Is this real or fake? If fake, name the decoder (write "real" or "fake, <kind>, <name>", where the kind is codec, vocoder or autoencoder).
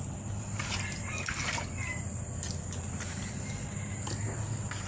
real